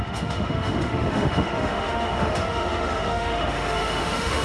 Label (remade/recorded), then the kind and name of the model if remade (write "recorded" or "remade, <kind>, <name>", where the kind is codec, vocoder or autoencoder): remade, autoencoder, DAC-VAE